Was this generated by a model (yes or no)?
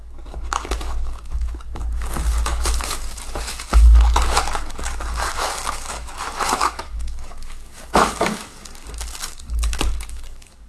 yes